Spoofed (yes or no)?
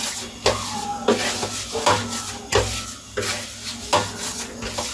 no